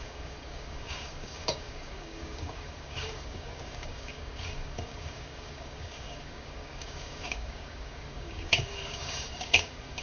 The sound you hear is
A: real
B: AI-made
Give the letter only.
B